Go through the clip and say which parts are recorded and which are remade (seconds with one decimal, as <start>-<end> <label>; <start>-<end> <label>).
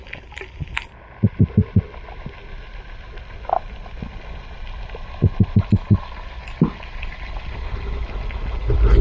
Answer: 0.0-9.0 recorded